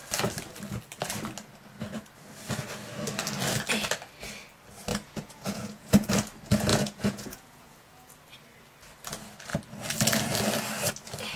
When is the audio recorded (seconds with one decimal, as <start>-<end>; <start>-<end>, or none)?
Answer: 0.0-4.9; 6.1-6.7; 8.1-11.4